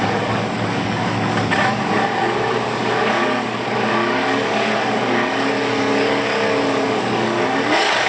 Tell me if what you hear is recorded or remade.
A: remade